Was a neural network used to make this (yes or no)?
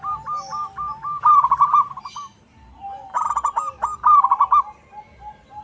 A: no